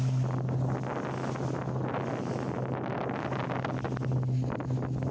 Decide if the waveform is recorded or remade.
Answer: recorded